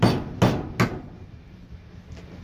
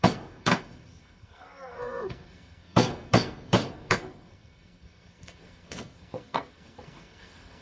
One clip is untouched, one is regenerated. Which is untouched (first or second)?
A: first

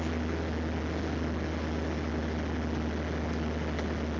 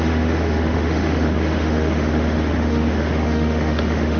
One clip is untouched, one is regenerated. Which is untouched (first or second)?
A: first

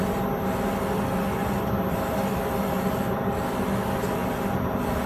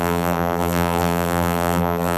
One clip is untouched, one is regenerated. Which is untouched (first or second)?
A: first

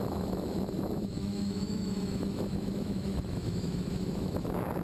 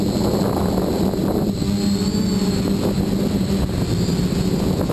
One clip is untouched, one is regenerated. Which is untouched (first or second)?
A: second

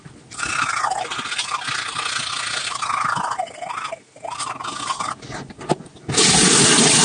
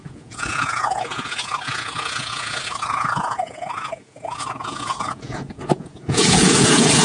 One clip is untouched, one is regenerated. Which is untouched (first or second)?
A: first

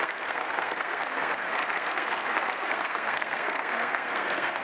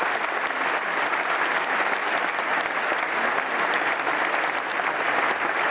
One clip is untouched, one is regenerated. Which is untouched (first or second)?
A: second